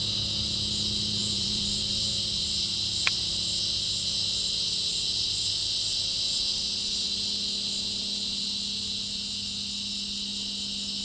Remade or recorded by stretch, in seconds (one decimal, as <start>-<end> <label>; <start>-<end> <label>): 0.0-1.2 recorded; 1.2-3.6 remade; 3.6-11.0 recorded